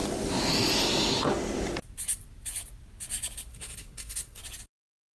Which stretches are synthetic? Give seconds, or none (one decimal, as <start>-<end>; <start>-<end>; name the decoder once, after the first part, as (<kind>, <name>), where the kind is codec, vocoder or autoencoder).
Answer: 3.5-4.4 (codec, SNAC)